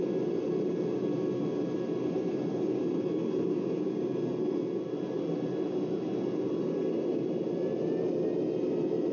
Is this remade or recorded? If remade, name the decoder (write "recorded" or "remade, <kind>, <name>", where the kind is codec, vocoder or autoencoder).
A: recorded